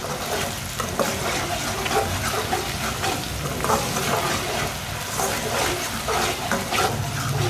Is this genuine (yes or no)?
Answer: yes